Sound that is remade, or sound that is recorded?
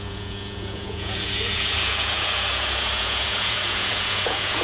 remade